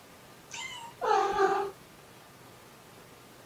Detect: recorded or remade recorded